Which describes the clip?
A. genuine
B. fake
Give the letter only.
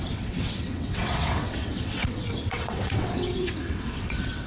B